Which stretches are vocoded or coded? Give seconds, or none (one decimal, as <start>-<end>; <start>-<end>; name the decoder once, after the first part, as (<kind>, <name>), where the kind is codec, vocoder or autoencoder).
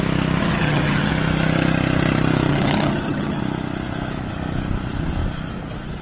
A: 0.4-1.1 (vocoder, HiFi-GAN); 2.5-3.4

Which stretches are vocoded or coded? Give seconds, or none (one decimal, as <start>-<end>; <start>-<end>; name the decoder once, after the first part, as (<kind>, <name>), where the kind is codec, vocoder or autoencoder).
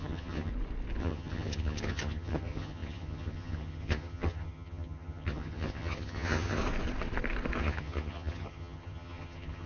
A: 0.0-0.5 (vocoder, HiFi-GAN); 1.0-6.6; 7.6-9.7